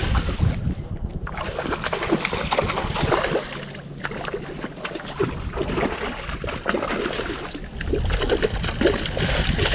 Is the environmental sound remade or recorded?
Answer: recorded